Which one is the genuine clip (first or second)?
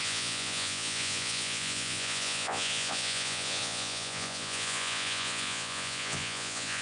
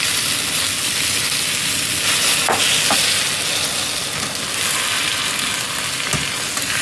second